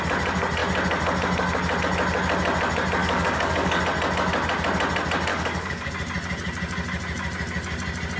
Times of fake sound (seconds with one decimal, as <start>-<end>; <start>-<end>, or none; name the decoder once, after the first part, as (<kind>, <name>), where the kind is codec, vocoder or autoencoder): 3.0-3.8 (codec, DAC); 5.3-5.9